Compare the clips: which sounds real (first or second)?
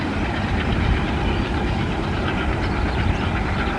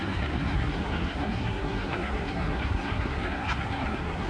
first